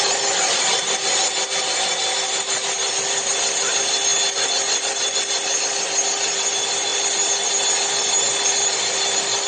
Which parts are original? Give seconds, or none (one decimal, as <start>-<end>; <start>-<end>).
0.0-9.5